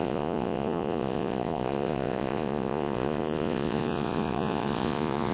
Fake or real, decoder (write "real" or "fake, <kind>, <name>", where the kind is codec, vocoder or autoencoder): fake, vocoder, Vocos